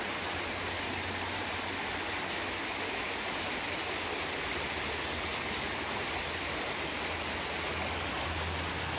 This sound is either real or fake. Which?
real